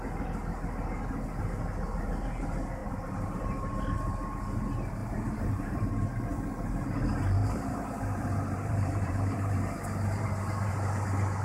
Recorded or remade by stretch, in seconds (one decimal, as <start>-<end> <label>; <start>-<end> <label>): 0.0-2.8 recorded; 2.8-3.8 remade; 3.8-5.0 recorded; 5.0-5.8 remade; 5.8-7.4 recorded; 7.4-10.7 remade; 10.7-11.4 recorded